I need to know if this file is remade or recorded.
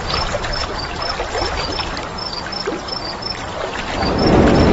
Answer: recorded